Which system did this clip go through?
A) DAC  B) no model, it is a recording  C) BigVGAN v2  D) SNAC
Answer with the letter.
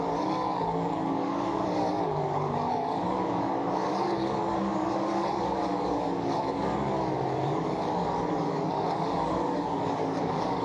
A